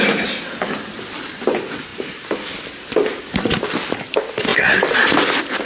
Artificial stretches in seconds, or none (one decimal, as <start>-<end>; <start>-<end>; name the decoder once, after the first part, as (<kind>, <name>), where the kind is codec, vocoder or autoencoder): none